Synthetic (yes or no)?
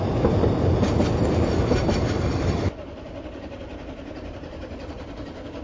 yes